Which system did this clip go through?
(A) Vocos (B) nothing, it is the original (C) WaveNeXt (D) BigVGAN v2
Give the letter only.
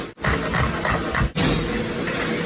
B